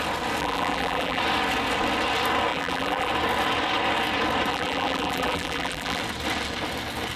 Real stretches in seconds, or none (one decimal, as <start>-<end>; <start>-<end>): 0.0-0.4; 1.2-2.5; 3.1-4.5; 6.0-7.2